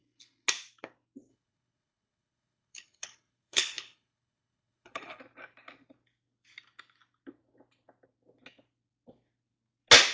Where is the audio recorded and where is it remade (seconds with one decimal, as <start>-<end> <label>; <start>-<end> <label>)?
0.0-1.3 recorded; 1.3-5.2 remade; 5.2-10.1 recorded